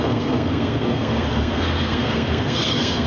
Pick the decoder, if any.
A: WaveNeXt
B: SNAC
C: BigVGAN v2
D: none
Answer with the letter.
B